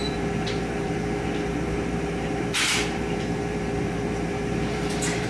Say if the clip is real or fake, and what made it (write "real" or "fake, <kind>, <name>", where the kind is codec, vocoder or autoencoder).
fake, vocoder, BigVGAN v2